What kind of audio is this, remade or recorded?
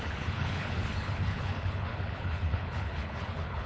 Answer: remade